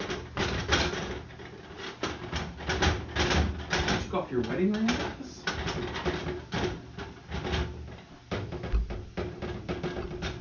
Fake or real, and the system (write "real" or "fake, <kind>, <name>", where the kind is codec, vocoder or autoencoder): real